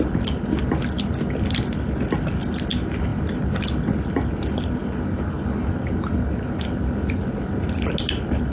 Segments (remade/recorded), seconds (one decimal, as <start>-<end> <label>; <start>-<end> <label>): 0.0-8.5 recorded